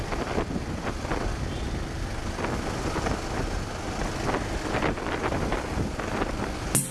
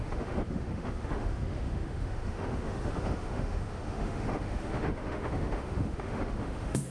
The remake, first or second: second